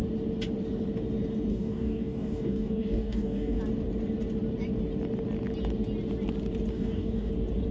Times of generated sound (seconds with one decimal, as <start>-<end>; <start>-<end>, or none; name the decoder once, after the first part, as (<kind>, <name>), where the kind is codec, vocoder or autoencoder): 1.5-3.6 (codec, DAC); 6.7-7.3